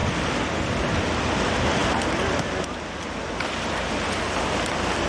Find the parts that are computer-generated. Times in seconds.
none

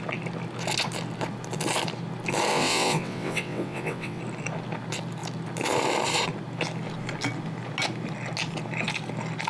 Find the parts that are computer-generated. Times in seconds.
2.5-4.2 (vocoder, WaveNeXt)

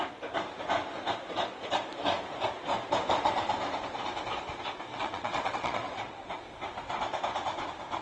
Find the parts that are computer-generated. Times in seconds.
4.9-6.3 (vocoder, WaveNeXt)

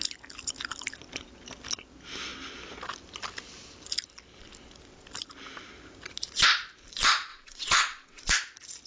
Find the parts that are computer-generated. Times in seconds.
7.3-8.2 (vocoder, WaveNeXt)